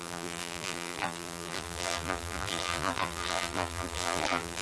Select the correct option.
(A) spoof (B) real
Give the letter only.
A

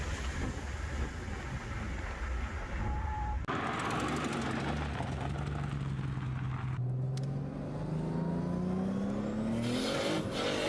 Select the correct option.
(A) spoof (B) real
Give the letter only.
B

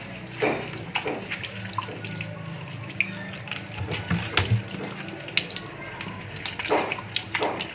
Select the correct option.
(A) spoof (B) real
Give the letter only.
B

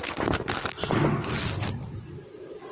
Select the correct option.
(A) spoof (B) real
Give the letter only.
B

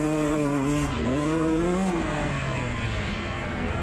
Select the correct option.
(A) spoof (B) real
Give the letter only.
A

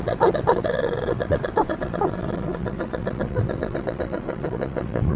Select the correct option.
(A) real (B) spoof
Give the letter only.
B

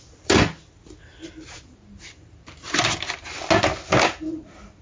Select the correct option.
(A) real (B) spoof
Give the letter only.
A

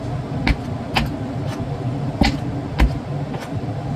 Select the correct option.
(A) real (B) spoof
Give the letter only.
A